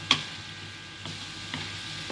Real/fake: real